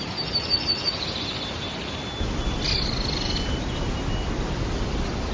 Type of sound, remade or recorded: recorded